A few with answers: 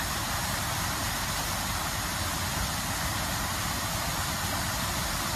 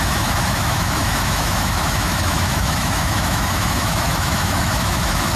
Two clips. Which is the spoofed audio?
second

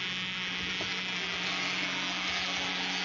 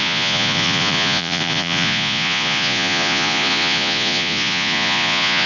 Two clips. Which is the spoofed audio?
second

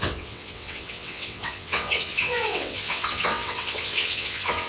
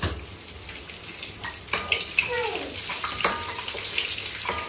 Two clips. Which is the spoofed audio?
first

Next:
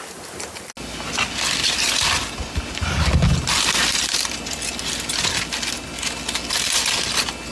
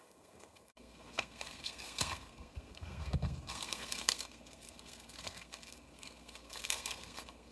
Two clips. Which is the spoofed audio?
second